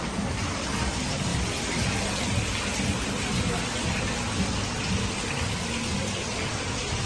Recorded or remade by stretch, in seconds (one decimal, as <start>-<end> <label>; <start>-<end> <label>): 0.0-7.1 recorded